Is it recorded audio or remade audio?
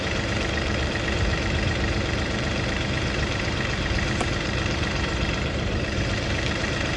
remade